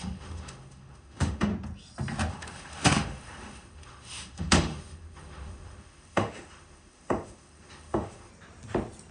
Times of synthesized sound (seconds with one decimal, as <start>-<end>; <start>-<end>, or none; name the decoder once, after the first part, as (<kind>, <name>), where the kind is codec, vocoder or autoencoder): 0.0-1.5 (autoencoder, DAC-VAE); 2.3-8.3